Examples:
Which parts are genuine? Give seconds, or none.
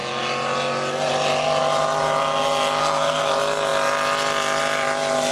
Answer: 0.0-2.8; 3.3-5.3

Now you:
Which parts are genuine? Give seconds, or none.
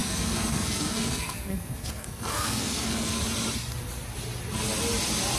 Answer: 3.2-5.4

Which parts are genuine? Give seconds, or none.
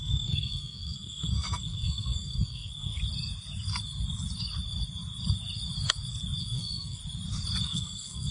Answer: 3.0-6.4; 7.0-7.6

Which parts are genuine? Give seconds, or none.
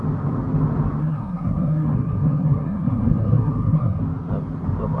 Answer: 0.0-1.0; 4.0-5.0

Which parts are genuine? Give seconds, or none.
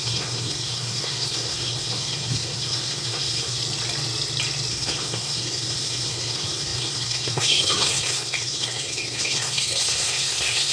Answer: 3.6-4.7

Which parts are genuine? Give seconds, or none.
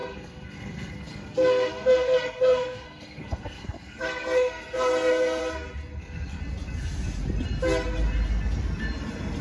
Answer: 5.4-6.0; 6.4-9.4